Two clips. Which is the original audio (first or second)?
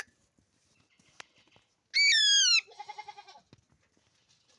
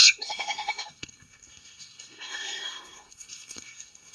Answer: first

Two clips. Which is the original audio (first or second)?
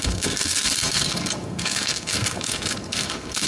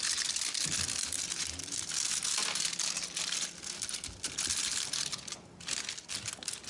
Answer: second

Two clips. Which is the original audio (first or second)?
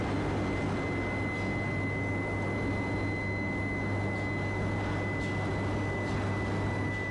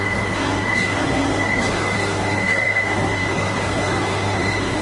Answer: first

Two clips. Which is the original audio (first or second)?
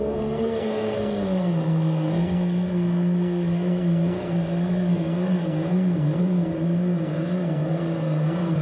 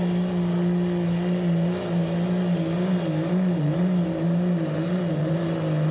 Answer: second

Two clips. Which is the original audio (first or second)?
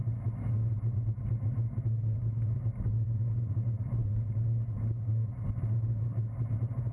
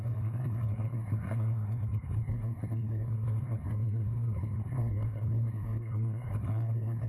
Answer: first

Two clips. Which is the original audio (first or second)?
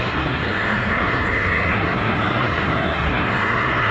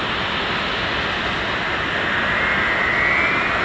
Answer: second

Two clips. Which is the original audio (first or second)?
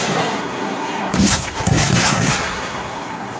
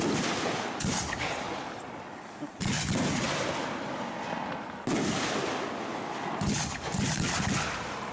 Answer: second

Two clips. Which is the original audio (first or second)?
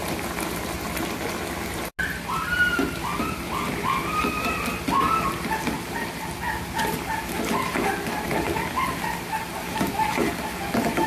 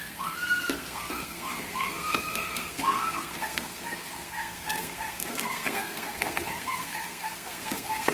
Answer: first